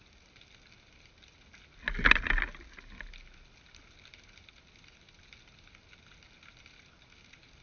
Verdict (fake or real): real